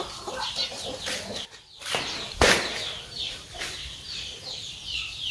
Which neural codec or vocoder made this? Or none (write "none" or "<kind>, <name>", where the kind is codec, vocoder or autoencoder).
vocoder, BigVGAN v2